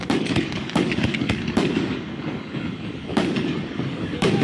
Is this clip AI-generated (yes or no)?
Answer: yes